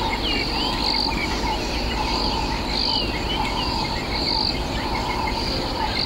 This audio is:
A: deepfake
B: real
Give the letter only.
B